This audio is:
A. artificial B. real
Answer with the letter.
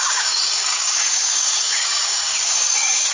A